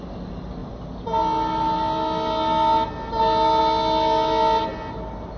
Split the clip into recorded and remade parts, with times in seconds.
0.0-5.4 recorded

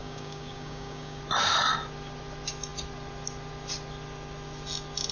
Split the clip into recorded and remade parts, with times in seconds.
0.0-1.2 remade; 1.2-5.1 recorded

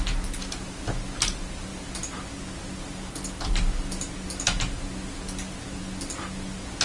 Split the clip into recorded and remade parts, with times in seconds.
0.0-6.8 recorded